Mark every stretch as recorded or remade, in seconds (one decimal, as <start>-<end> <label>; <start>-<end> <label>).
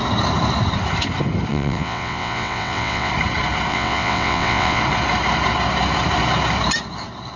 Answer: 0.0-1.5 recorded; 1.5-3.1 remade; 3.1-3.7 recorded; 3.7-4.8 remade; 4.8-7.4 recorded